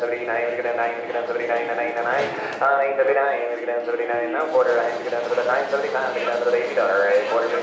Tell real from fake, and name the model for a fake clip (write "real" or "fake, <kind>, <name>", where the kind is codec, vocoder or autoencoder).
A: real